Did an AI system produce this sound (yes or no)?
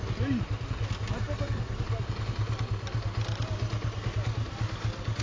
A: no